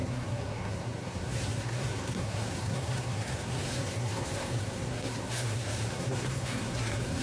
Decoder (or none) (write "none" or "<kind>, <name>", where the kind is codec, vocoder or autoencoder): codec, SNAC